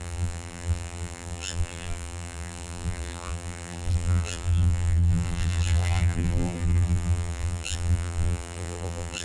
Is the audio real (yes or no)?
no